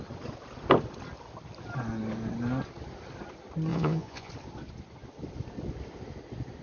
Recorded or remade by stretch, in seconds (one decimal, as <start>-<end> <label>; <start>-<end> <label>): 0.0-3.7 recorded; 3.7-4.3 remade; 4.3-6.6 recorded